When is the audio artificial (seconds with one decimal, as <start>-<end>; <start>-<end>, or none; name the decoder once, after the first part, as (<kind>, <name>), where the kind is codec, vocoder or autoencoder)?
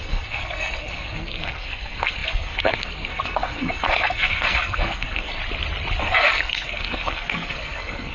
0.0-5.4 (codec, SNAC); 6.0-8.1